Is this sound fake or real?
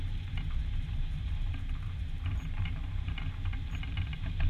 fake